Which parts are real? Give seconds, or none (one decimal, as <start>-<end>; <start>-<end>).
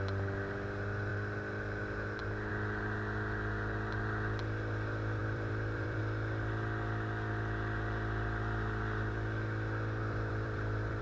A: 0.0-5.2; 6.0-10.0